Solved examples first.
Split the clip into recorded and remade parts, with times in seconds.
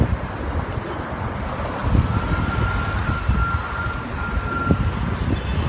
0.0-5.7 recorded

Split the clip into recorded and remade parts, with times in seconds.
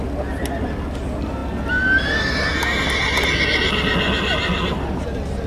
0.0-5.5 recorded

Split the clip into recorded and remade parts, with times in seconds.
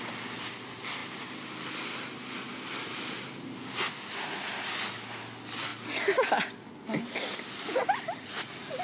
0.0-8.8 recorded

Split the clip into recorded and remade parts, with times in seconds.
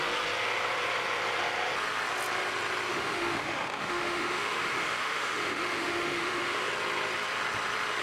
0.0-2.9 recorded; 2.9-6.7 remade; 6.7-8.0 recorded